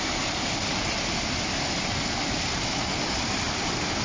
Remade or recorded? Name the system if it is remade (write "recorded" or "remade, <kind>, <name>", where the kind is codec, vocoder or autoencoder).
recorded